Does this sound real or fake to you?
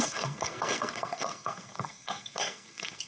fake